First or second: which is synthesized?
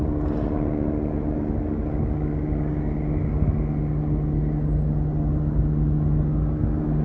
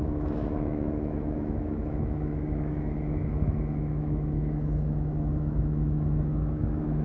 second